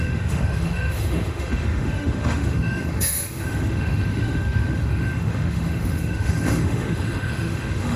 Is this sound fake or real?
fake